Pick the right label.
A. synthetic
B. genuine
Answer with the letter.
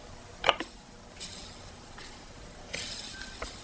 B